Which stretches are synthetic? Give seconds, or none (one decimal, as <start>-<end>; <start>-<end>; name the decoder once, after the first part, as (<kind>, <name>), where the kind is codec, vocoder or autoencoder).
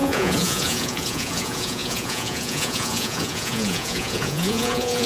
0.0-5.1 (vocoder, Vocos)